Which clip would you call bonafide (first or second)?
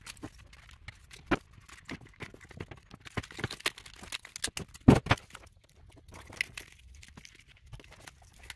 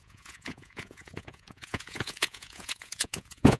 first